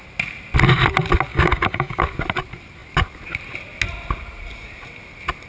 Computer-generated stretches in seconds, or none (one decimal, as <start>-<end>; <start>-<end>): 1.3-2.0